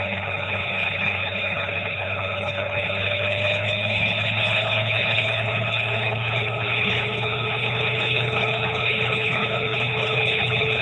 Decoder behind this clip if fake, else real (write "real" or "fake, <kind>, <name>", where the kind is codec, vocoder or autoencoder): fake, codec, HILCodec